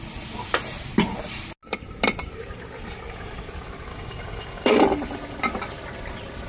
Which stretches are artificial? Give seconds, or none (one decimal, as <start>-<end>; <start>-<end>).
3.9-4.8